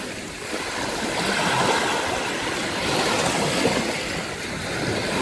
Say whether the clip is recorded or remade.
recorded